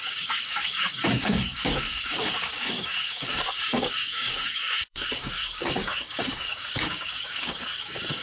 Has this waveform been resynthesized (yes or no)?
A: yes